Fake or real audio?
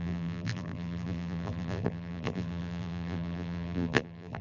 fake